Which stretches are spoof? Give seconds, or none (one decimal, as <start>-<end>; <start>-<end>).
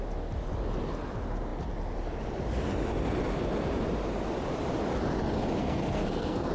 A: 5.6-6.5